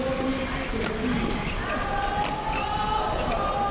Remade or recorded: recorded